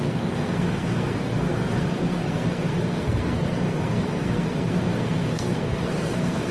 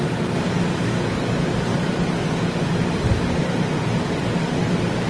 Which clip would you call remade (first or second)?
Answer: first